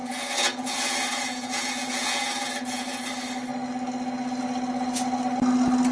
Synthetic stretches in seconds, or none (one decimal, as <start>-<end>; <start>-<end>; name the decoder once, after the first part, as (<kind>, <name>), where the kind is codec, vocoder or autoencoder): 0.0-3.1 (vocoder, Vocos)